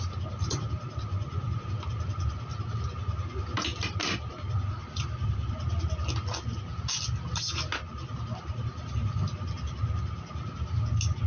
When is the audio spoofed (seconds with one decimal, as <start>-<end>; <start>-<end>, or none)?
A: 1.1-1.6